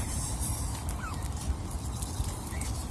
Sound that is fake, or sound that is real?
real